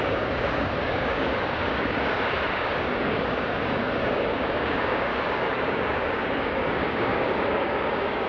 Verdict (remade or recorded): remade